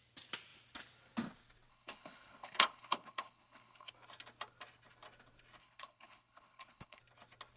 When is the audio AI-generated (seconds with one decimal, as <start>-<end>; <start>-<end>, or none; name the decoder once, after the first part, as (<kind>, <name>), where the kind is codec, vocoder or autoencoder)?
1.7-3.9 (codec, HILCodec); 5.6-7.0